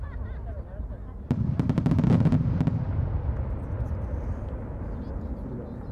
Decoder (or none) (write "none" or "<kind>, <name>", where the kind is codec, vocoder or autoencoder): none